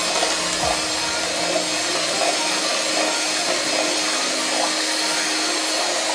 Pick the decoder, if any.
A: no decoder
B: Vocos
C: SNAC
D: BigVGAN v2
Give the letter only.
A